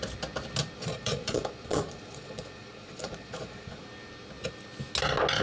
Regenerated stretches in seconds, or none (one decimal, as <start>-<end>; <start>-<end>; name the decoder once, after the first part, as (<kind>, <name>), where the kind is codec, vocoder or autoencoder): 0.8-3.8 (vocoder, Vocos)